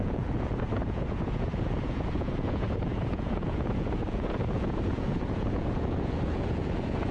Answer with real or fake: fake